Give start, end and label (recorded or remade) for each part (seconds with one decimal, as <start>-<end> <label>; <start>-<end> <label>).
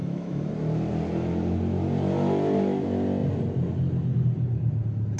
0.0-0.5 remade; 0.5-5.2 recorded